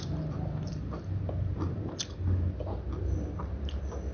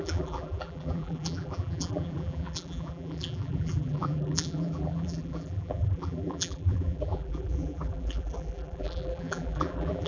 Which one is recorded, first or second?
first